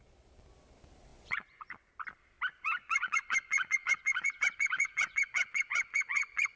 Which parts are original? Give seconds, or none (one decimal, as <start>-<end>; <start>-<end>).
0.0-1.1; 1.9-2.5